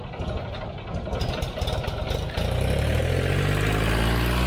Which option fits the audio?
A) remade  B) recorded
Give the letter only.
B